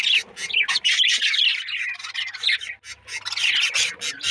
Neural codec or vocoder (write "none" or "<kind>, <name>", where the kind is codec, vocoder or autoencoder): none